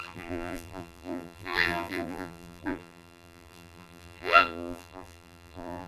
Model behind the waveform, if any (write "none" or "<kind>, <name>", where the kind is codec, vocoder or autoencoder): vocoder, BigVGAN v2